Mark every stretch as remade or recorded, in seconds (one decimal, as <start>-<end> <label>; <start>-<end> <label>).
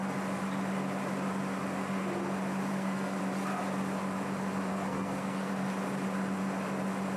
0.0-2.7 recorded; 2.7-3.2 remade; 3.2-4.7 recorded; 4.7-5.5 remade; 5.5-7.2 recorded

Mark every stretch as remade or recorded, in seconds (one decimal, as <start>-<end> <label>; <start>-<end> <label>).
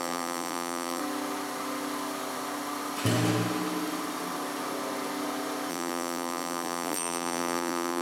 0.0-1.0 remade; 1.0-5.7 recorded; 5.7-8.0 remade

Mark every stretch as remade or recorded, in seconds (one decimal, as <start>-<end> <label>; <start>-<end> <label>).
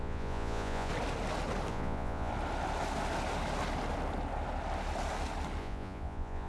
0.0-0.9 remade; 0.9-1.7 recorded; 1.7-2.3 remade; 2.3-5.6 recorded; 5.6-6.5 remade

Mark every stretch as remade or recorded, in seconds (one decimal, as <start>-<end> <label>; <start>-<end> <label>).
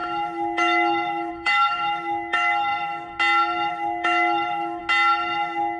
0.0-2.7 remade; 2.7-3.7 recorded; 3.7-4.8 remade; 4.8-5.8 recorded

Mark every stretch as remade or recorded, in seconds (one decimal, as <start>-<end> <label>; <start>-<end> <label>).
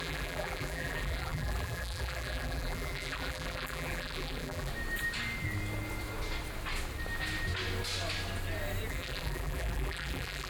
0.0-4.7 remade; 4.7-8.9 recorded; 8.9-10.5 remade